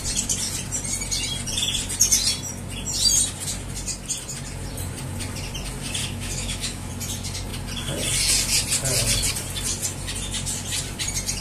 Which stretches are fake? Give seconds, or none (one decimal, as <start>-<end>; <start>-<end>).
6.0-6.9